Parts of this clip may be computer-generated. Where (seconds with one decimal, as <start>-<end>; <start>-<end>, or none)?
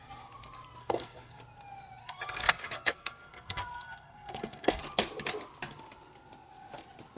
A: 0.8-1.4; 2.0-4.8